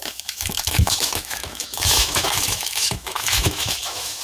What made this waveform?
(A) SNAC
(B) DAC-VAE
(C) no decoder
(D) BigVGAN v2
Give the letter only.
B